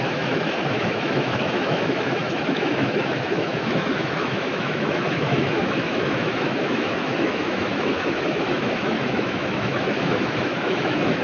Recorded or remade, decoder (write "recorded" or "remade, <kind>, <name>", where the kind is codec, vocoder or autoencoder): remade, autoencoder, DAC-VAE